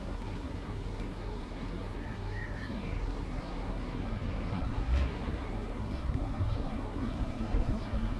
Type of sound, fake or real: fake